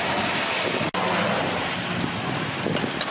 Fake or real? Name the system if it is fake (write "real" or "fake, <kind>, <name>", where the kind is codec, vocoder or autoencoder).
real